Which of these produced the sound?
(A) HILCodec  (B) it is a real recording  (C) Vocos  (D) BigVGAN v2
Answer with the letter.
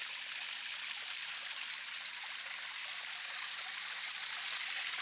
B